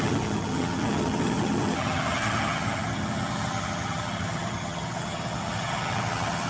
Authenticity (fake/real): fake